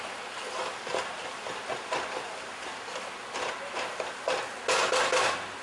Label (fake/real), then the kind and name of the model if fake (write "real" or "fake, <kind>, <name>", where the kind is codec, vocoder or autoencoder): real